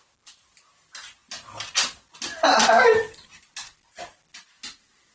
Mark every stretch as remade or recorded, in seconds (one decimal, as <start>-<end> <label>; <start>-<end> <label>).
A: 0.0-5.1 recorded